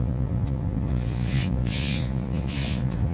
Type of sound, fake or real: fake